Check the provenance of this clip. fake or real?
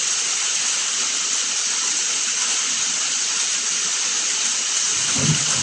real